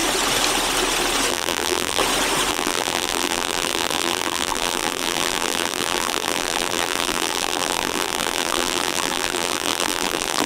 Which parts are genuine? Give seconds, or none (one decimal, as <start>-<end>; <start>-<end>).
0.0-1.3; 2.0-2.5